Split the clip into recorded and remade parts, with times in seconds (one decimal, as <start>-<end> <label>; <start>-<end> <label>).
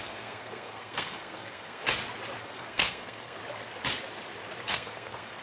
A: 0.0-1.8 remade; 1.8-2.4 recorded; 2.4-3.4 remade; 3.4-4.7 recorded; 4.7-5.4 remade